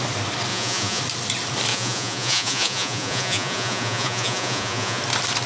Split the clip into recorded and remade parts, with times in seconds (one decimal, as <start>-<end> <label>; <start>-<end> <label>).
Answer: 0.0-0.5 recorded; 0.5-1.0 remade; 1.0-1.7 recorded; 1.7-5.0 remade; 5.0-5.5 recorded